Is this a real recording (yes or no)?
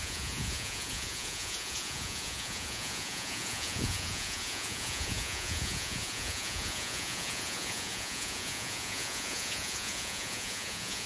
no